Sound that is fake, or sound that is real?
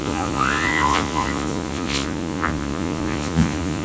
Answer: fake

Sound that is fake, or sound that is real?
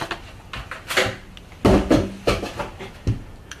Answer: real